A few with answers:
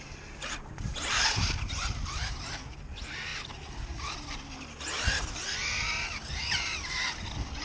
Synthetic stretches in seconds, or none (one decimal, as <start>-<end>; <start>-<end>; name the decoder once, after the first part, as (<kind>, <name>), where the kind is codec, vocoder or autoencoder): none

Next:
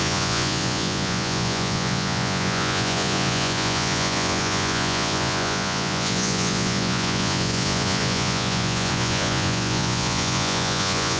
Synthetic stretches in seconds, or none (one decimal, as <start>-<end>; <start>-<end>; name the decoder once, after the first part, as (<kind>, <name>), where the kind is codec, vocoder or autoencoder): 0.0-11.2 (vocoder, Vocos)

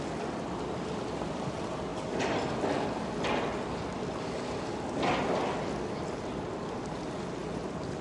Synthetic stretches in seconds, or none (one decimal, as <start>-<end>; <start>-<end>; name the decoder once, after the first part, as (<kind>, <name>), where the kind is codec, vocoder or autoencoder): none

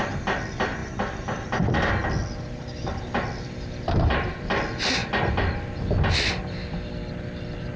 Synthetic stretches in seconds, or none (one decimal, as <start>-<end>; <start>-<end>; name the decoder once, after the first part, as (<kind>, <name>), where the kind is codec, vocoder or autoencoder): none

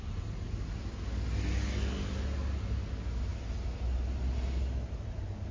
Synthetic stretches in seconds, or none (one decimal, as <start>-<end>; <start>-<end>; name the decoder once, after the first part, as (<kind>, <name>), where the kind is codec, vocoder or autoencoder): none